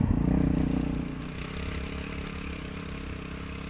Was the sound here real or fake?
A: real